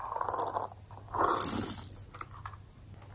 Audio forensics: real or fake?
real